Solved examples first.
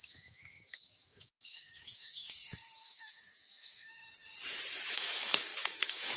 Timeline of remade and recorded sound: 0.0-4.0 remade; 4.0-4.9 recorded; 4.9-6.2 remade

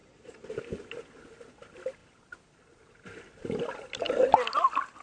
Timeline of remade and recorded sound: 0.0-0.6 remade; 0.6-5.0 recorded

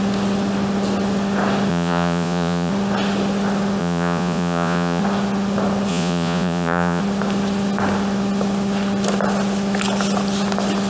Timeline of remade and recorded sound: 0.0-1.7 recorded; 1.7-2.7 remade; 2.7-3.8 recorded; 3.8-5.0 remade; 5.0-5.9 recorded; 5.9-7.0 remade; 7.0-10.9 recorded

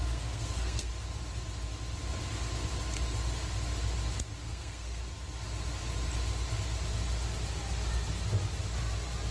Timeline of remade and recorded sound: 0.0-0.9 remade; 0.9-4.4 recorded; 4.4-5.0 remade; 5.0-9.3 recorded

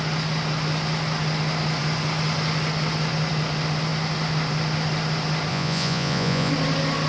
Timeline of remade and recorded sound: 0.0-5.5 recorded; 5.5-6.5 remade; 6.5-7.1 recorded

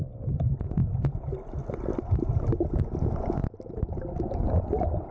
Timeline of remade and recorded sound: 0.0-5.1 recorded